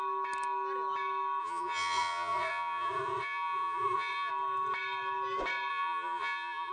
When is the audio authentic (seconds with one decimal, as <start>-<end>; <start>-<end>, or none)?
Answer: 0.0-1.4; 4.3-5.7